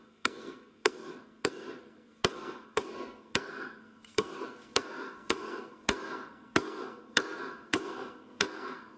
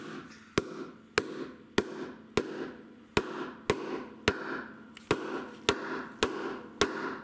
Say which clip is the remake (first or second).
first